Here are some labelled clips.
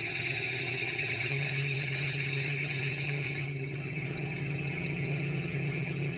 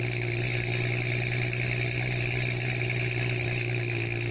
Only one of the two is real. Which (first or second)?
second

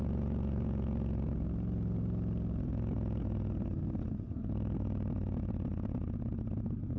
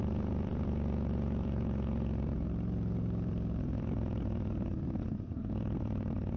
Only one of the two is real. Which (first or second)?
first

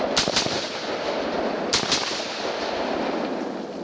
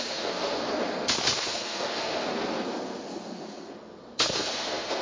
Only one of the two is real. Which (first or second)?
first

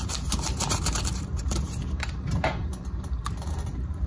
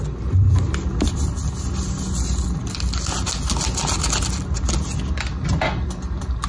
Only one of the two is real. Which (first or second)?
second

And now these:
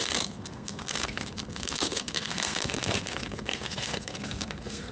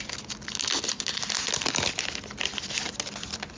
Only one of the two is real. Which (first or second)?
second